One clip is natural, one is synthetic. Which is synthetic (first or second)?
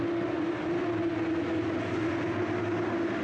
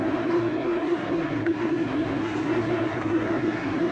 second